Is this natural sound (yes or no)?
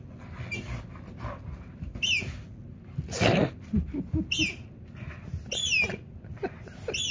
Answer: yes